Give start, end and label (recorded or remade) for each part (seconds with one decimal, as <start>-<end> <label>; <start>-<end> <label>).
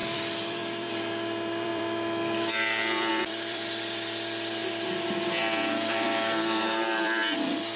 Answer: 0.0-4.6 remade; 4.6-5.4 recorded; 5.4-7.8 remade